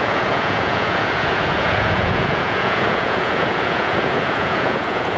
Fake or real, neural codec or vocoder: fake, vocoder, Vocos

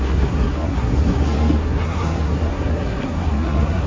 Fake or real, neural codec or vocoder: fake, codec, SNAC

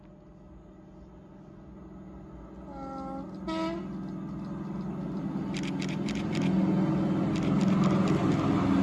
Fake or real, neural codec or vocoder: real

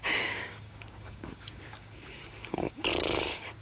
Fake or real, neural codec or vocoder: fake, codec, DAC